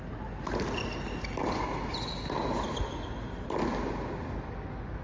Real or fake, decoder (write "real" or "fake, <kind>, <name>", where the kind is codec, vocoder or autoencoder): real